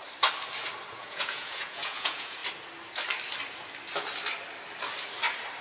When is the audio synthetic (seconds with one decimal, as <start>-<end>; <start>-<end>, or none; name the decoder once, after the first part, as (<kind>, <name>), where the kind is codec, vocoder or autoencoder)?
0.9-2.4 (vocoder, Vocos)